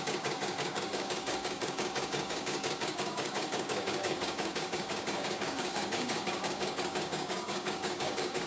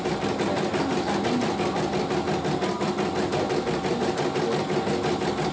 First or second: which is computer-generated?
first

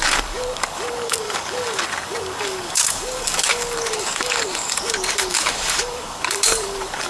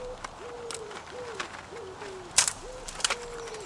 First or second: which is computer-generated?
first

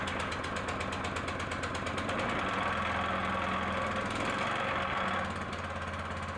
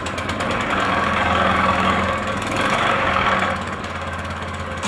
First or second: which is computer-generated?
second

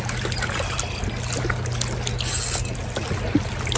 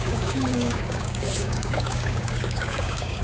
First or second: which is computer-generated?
second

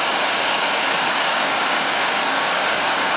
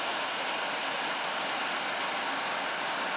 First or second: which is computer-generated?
first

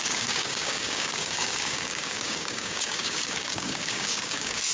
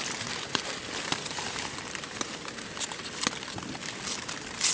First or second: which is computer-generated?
first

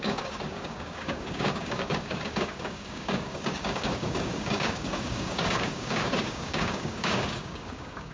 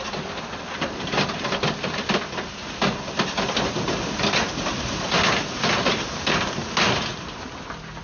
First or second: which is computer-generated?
first